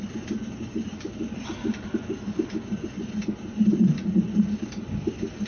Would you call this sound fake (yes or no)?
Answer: no